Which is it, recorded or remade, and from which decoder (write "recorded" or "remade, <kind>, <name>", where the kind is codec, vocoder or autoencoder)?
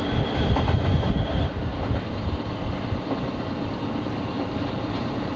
recorded